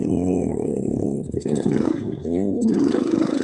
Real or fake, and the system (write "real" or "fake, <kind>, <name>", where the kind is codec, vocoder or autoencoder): fake, codec, SNAC